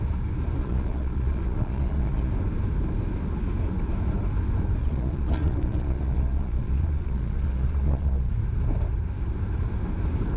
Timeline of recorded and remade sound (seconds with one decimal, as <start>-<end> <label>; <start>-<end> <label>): 0.0-0.6 recorded; 0.6-2.3 remade; 2.3-4.8 recorded; 4.8-8.3 remade; 8.3-10.4 recorded